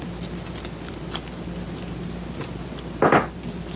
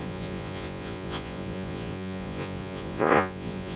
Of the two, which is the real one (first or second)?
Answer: first